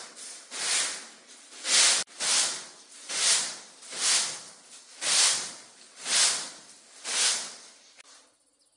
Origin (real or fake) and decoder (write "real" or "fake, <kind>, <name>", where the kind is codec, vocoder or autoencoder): real